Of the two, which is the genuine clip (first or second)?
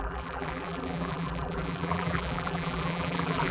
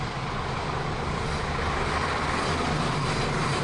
second